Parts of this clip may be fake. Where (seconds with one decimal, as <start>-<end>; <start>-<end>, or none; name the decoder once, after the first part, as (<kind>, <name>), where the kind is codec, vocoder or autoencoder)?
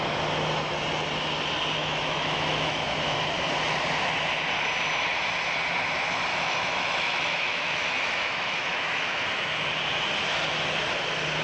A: 1.8-2.9 (autoencoder, DAC-VAE); 6.3-9.7